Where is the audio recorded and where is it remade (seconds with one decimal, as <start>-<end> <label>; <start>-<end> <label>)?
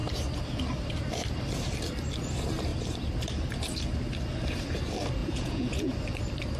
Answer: 0.0-5.2 recorded; 5.2-5.9 remade; 5.9-6.6 recorded